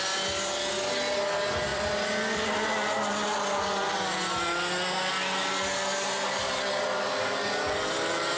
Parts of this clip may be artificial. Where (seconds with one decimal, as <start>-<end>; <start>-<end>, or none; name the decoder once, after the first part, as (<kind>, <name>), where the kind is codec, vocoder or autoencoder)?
1.7-2.5 (vocoder, BigVGAN v2)